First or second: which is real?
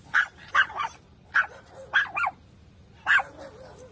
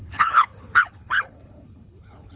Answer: first